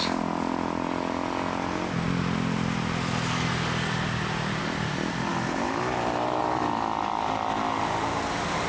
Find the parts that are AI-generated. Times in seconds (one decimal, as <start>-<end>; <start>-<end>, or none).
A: none